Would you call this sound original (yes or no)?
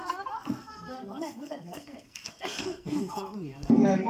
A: no